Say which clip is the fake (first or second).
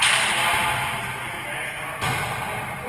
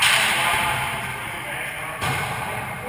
second